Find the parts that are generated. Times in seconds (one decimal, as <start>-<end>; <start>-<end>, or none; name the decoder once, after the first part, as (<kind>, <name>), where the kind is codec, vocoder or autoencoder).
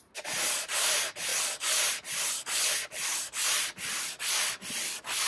none